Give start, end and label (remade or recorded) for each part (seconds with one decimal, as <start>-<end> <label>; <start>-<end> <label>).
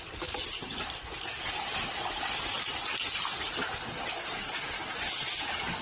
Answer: 0.0-5.8 recorded